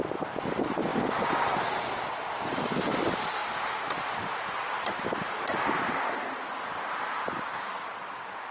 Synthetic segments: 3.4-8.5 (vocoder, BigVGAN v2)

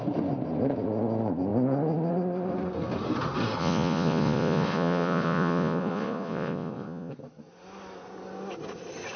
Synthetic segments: 3.6-7.1 (vocoder, Vocos)

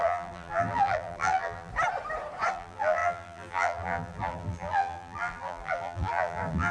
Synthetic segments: 0.0-1.7 (vocoder, BigVGAN v2); 2.5-6.7

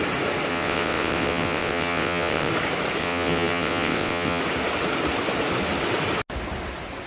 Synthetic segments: 0.5-2.5 (vocoder, WaveNeXt); 3.0-4.4

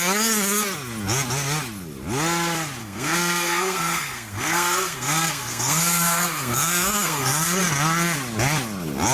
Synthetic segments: 2.8-7.6 (codec, SNAC)

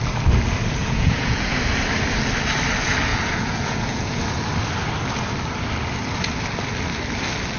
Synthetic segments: 0.8-1.6 (vocoder, Vocos); 3.1-4.2

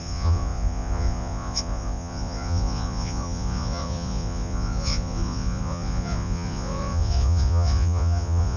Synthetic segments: 0.0-8.6 (vocoder, Vocos)